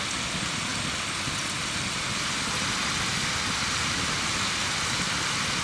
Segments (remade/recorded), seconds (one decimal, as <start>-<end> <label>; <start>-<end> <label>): 0.0-5.6 recorded

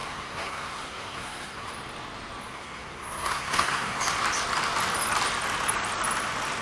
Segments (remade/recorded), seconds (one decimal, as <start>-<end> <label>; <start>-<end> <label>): 0.0-1.7 remade; 1.7-2.5 recorded; 2.5-4.0 remade; 4.0-6.6 recorded